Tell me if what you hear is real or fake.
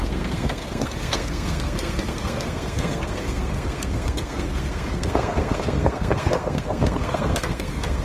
fake